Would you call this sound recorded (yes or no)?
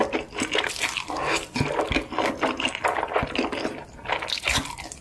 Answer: yes